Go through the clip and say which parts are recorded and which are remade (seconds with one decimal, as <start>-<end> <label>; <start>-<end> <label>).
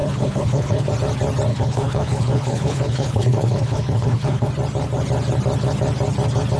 0.0-0.9 remade; 0.9-1.5 recorded; 1.5-4.5 remade; 4.5-6.6 recorded